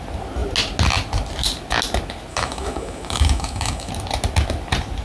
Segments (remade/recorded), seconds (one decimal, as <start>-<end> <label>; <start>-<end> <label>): 0.0-2.3 recorded; 2.3-3.9 remade; 3.9-5.0 recorded

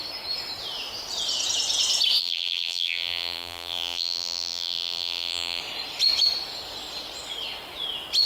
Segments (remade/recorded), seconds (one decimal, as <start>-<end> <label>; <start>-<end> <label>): 0.0-2.2 recorded; 2.2-5.6 remade; 5.6-8.3 recorded

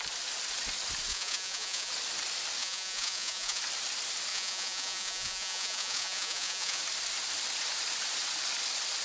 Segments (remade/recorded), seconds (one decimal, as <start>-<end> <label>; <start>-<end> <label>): 0.0-1.1 recorded; 1.1-1.9 remade; 1.9-2.6 recorded; 2.6-3.6 remade; 3.6-4.3 recorded; 4.3-6.8 remade; 6.8-9.0 recorded

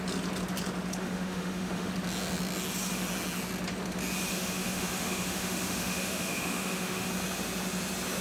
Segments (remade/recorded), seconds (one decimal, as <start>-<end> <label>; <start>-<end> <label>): 0.0-1.0 recorded; 1.0-1.9 remade; 1.9-4.3 recorded; 4.3-7.1 remade; 7.1-8.2 recorded